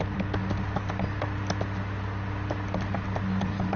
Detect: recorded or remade recorded